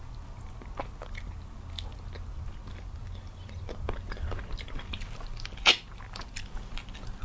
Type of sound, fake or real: real